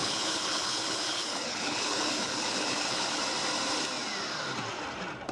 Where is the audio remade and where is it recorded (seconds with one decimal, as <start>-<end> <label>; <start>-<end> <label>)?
0.0-3.2 remade; 3.2-5.3 recorded